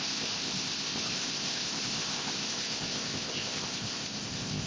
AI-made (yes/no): yes